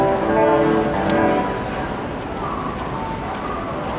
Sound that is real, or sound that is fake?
real